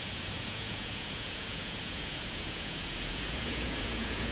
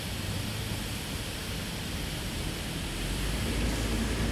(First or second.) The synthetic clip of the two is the first